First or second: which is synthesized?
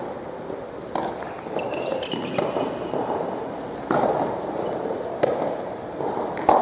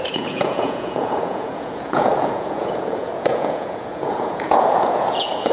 second